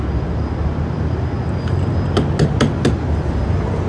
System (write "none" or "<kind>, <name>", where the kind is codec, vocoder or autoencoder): none